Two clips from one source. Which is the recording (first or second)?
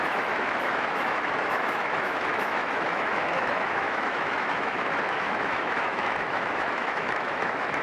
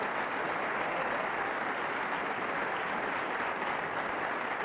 second